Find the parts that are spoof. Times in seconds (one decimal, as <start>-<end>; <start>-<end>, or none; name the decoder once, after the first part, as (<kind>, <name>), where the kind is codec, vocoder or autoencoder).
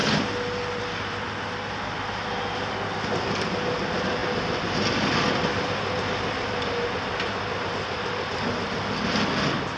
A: none